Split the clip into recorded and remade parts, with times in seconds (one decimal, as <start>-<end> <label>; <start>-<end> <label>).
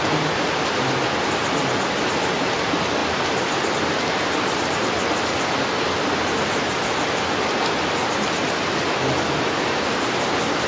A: 0.0-3.0 recorded; 3.0-4.2 remade; 4.2-10.7 recorded